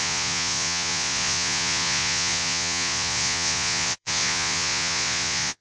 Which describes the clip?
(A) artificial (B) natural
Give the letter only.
A